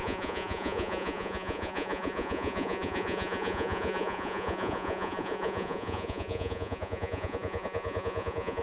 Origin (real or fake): fake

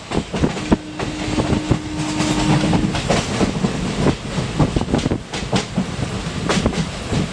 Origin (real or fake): real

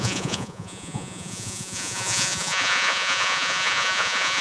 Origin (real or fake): fake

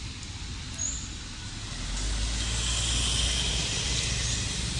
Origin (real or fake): real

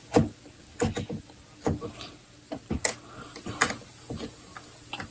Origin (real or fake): real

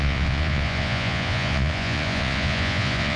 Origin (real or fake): fake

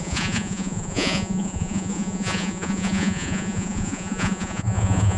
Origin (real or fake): fake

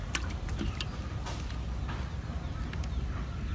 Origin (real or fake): real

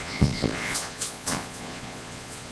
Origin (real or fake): fake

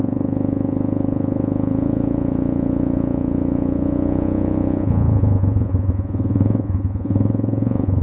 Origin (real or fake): fake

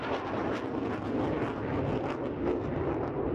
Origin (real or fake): real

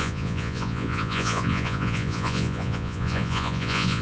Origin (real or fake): fake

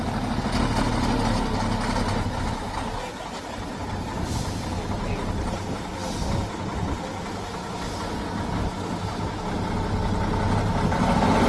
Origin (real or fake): real